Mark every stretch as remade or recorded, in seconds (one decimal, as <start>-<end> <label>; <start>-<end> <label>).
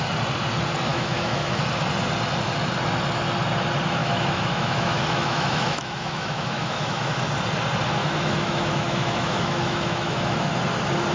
0.0-0.9 recorded; 0.9-1.6 remade; 1.6-4.0 recorded; 4.0-7.0 remade; 7.0-8.0 recorded; 8.0-10.5 remade; 10.5-11.1 recorded